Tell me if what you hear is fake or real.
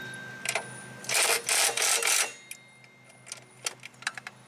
real